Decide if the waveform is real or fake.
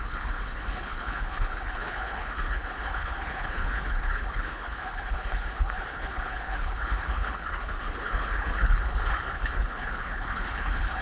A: fake